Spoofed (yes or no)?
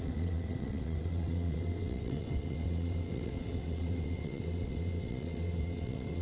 yes